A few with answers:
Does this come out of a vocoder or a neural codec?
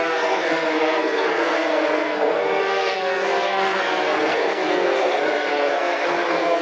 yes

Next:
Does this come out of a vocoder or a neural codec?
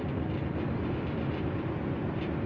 no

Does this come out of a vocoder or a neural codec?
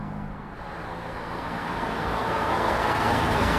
yes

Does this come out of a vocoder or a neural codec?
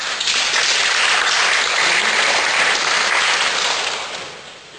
no